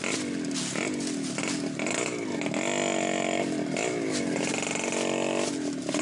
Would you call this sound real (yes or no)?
yes